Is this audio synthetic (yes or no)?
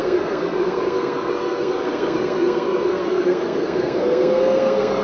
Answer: yes